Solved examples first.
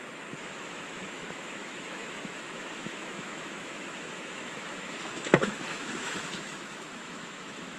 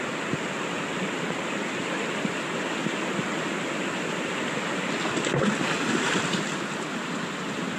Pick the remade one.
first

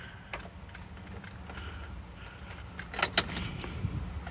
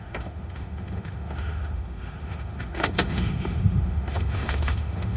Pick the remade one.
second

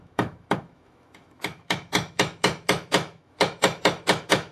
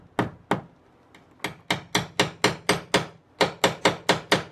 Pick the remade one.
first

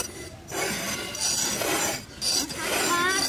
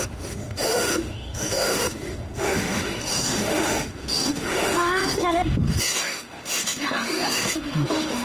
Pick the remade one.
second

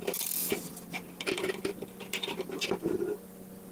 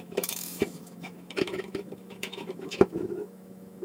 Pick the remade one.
second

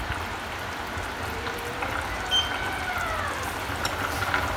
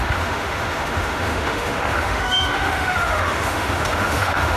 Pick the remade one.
second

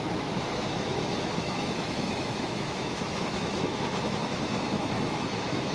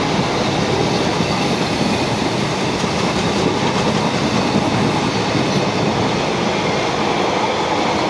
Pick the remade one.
first